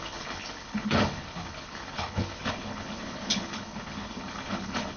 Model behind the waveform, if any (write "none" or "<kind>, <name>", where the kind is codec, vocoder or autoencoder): codec, HILCodec